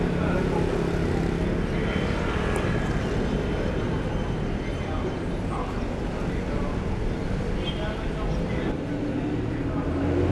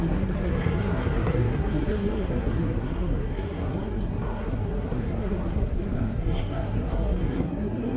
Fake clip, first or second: second